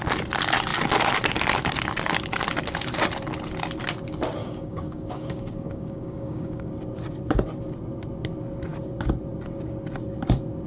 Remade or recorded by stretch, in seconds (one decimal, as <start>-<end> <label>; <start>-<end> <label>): 0.0-4.4 recorded; 4.4-6.7 remade; 6.7-10.7 recorded